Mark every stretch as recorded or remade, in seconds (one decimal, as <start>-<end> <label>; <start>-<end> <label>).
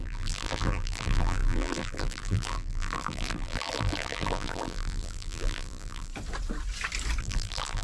0.0-6.1 remade; 6.1-7.2 recorded; 7.2-7.8 remade